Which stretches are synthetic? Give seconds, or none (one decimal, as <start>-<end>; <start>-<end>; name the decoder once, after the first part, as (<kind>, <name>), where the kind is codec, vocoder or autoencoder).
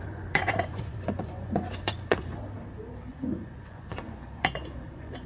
0.0-2.4 (vocoder, Vocos); 3.1-5.3